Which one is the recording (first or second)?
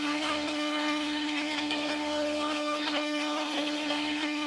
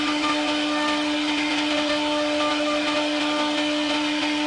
second